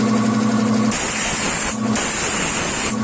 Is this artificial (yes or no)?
no